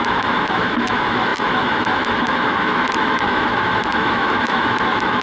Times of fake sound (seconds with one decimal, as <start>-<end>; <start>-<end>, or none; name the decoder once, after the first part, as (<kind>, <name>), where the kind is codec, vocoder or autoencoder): 0.0-5.2 (autoencoder, DAC-VAE)

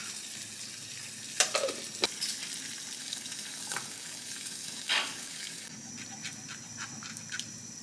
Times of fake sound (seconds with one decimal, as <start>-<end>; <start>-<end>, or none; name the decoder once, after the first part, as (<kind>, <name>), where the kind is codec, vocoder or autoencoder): 3.0-5.9 (codec, DAC)

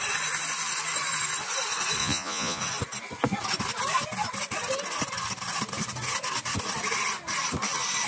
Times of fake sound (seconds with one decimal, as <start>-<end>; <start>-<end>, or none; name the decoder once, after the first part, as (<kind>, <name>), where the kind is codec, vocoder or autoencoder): 2.0-2.6 (vocoder, Vocos)